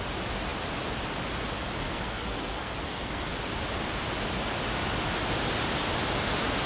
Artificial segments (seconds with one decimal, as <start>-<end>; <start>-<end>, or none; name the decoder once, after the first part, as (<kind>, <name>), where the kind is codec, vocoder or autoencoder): 1.8-3.3 (codec, SNAC)